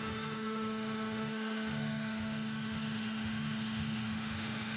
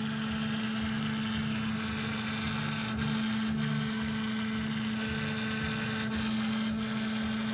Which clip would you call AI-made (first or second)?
first